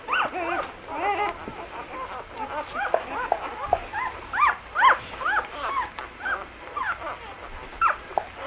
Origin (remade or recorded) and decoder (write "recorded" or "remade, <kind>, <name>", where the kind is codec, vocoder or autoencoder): recorded